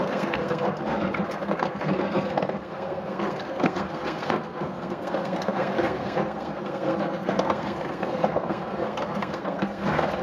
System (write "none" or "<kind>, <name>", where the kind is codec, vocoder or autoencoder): codec, SNAC